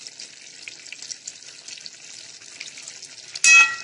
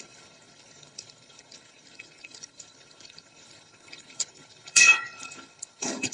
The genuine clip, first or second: first